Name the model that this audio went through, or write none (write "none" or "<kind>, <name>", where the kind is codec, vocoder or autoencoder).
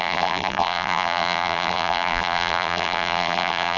vocoder, BigVGAN v2